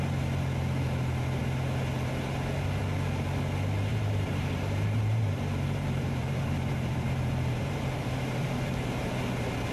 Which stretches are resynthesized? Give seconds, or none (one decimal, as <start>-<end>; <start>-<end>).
3.9-8.9